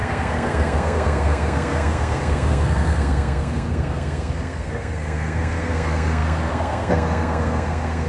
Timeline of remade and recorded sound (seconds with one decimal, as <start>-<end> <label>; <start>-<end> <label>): 0.0-8.1 remade